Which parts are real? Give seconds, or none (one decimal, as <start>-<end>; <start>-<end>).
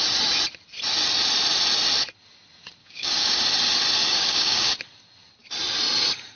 0.0-2.8; 3.4-4.0; 4.7-6.4